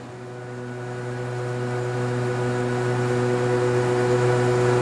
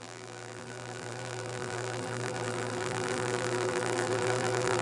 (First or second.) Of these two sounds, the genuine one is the first